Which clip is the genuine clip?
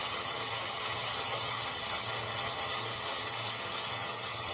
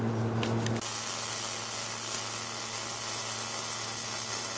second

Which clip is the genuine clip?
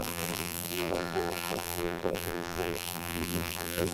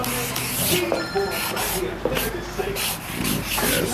second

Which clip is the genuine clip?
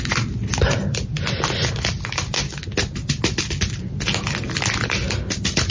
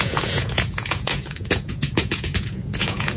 first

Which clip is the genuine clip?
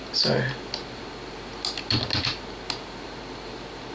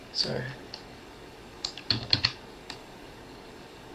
first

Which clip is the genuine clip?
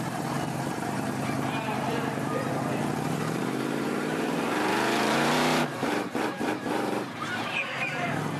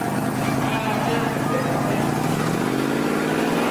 second